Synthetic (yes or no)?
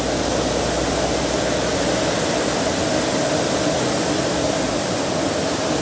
no